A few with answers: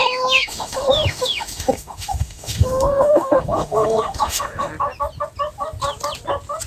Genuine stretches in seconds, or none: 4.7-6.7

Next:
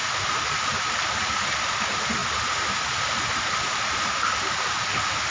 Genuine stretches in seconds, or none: 0.0-5.3